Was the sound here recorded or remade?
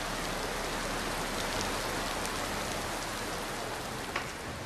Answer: recorded